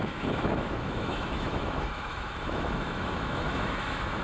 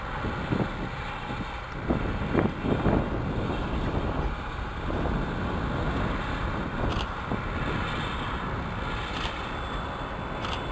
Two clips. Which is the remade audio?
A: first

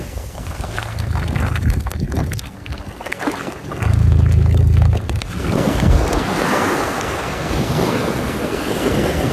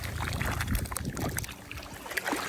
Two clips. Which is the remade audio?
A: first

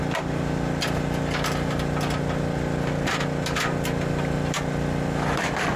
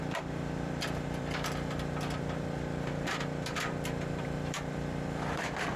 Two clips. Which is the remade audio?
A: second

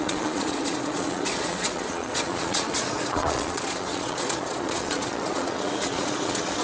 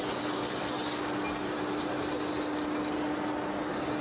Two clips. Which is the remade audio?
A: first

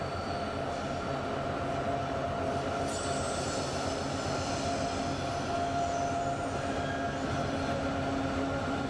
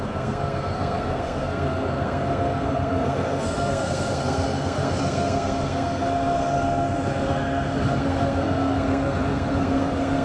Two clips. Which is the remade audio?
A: second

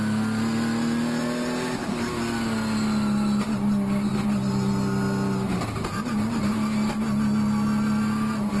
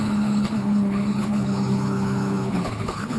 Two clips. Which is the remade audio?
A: second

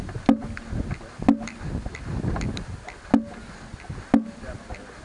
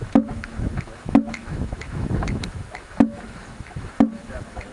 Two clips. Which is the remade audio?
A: second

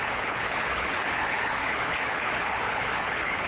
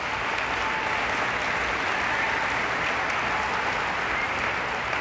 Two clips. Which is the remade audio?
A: first